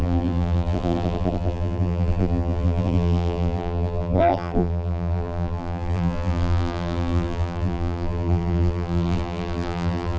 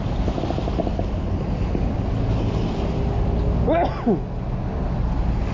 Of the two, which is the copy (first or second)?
first